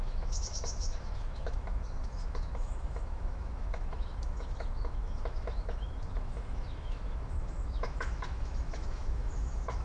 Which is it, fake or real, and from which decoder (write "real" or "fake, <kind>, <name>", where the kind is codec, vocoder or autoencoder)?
fake, autoencoder, DAC-VAE